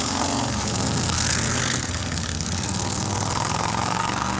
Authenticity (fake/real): fake